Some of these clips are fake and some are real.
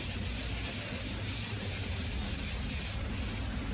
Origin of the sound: real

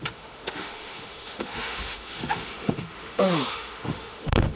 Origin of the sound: fake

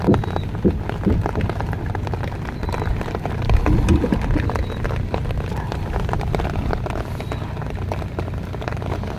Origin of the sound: real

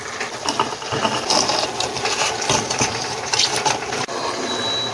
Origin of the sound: real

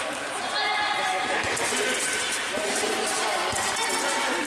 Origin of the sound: real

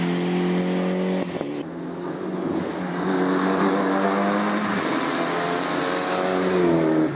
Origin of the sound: real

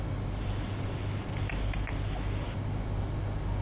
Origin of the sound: real